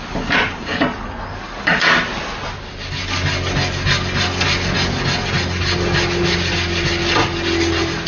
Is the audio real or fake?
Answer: real